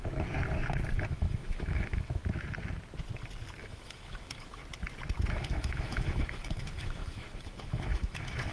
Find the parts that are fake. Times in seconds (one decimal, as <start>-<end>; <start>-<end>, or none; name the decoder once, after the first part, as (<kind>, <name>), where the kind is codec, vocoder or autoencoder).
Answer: 1.1-2.2 (autoencoder, DAC-VAE); 3.6-4.6; 5.3-8.5